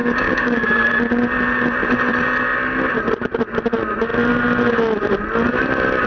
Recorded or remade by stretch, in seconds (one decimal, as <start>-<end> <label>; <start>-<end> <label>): 0.0-0.9 remade; 0.9-6.1 recorded